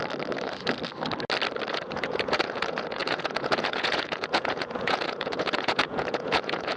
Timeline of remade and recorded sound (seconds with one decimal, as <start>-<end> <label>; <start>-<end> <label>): 0.0-1.7 recorded; 1.7-6.8 remade